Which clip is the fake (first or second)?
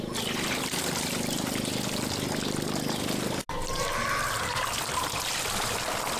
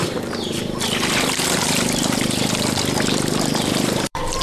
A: second